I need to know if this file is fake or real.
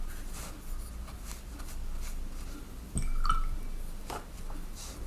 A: real